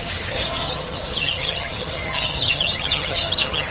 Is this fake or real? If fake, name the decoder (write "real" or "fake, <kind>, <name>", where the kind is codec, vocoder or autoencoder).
fake, vocoder, HiFi-GAN